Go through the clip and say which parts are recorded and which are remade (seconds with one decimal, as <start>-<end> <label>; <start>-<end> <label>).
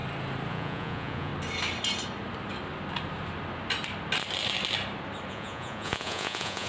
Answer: 0.0-0.5 recorded; 0.5-1.3 remade; 1.3-5.3 recorded; 5.3-6.7 remade